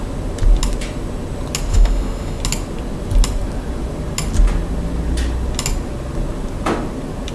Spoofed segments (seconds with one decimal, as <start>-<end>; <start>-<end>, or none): 1.7-2.4